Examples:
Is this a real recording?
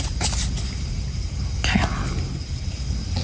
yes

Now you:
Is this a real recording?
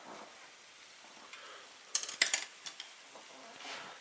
yes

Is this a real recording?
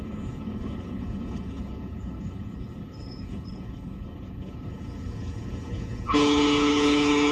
no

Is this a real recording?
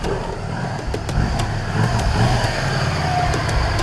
yes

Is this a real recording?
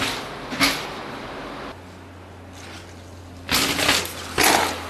yes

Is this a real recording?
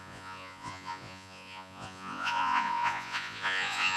no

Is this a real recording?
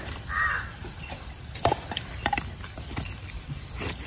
no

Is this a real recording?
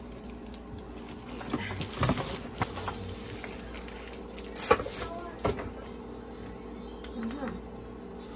yes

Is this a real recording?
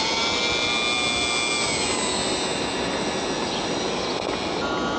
yes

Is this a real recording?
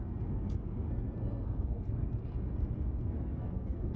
no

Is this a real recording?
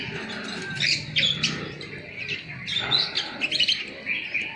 yes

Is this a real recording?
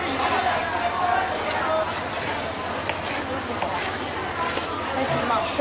yes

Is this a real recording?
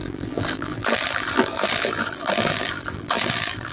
no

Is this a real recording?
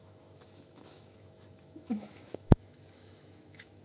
no